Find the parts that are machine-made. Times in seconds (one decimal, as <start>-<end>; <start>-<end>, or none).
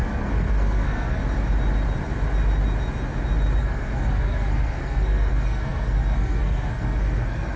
0.0-1.2; 3.6-7.6